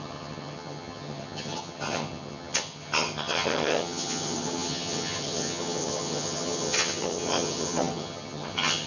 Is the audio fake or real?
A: fake